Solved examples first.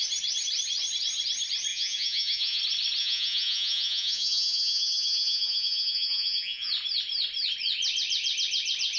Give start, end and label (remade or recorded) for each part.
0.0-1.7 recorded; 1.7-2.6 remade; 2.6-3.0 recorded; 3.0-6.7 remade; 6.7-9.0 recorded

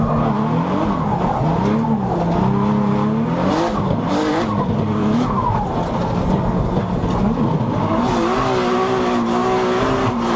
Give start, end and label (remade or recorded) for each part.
0.0-5.0 recorded; 5.0-5.6 remade; 5.6-10.4 recorded

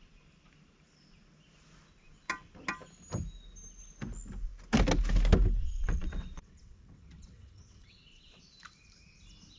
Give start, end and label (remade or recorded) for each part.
0.0-5.6 recorded; 5.6-8.4 remade; 8.4-9.6 recorded